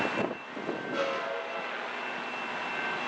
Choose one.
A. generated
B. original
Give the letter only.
B